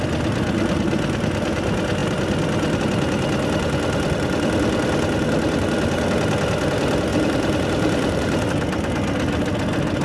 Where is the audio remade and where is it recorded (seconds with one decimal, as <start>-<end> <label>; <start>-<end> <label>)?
0.0-7.1 recorded; 7.1-8.5 remade; 8.5-10.0 recorded